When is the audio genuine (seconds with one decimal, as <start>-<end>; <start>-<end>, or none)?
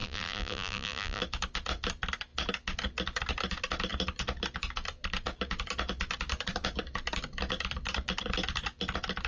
1.2-9.3